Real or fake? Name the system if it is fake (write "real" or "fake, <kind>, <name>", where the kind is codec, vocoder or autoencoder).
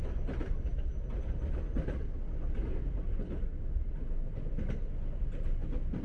real